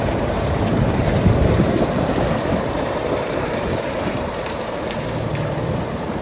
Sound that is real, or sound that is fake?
fake